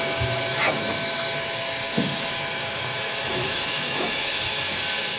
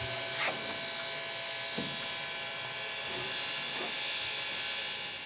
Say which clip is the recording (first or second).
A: second